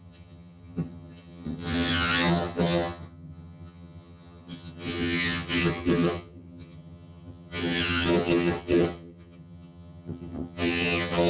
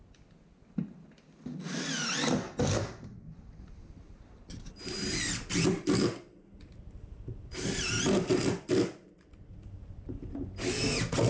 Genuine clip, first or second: second